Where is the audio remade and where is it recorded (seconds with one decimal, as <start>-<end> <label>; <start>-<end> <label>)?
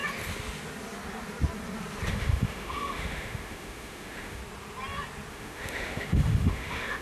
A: 0.0-2.1 recorded; 2.1-4.4 remade; 4.4-5.3 recorded; 5.3-7.0 remade